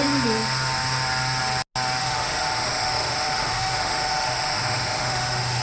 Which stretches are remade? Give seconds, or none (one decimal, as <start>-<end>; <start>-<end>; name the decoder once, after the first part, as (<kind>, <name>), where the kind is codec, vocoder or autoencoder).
2.0-5.6 (autoencoder, DAC-VAE)